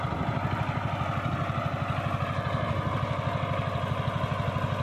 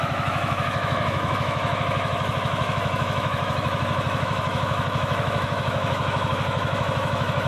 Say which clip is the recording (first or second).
first